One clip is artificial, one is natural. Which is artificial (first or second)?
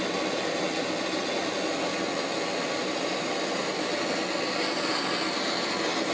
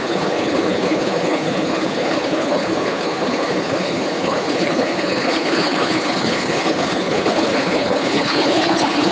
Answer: second